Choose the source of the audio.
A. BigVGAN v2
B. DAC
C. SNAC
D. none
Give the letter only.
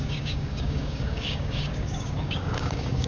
B